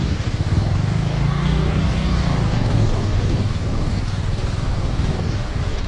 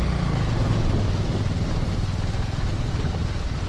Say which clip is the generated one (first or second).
first